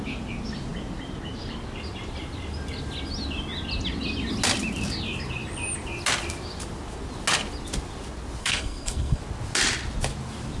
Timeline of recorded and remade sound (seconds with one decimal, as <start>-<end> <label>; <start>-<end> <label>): 0.0-8.4 recorded; 8.4-9.2 remade; 9.2-10.6 recorded